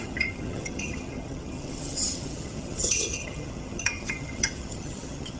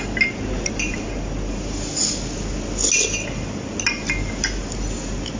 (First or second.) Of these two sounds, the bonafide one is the second